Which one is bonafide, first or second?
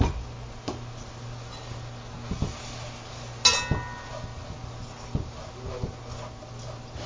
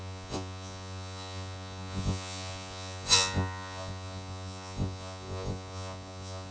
first